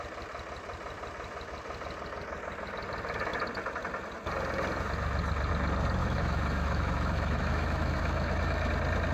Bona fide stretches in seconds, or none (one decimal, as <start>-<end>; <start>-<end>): 0.0-6.0; 8.7-9.1